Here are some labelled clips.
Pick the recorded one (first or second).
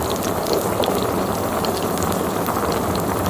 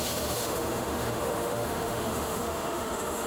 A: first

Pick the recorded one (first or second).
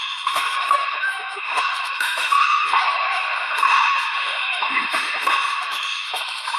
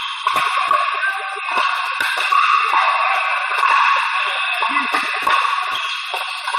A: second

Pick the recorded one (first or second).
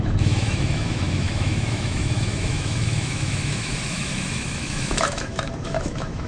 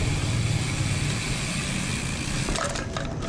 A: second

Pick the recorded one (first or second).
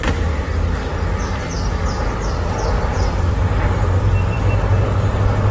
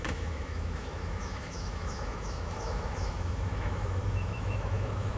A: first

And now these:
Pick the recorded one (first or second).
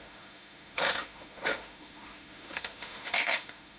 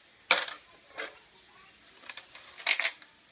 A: second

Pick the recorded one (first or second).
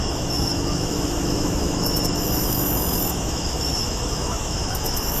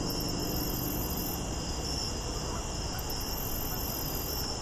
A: second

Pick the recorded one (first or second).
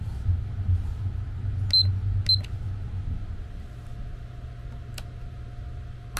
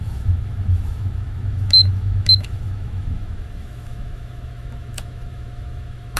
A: first